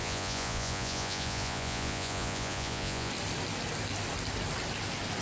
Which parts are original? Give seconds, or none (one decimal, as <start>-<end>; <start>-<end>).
3.1-5.2